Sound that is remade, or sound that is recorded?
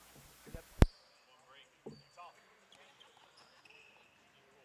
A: recorded